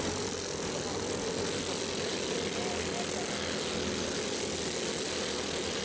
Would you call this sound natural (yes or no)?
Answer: yes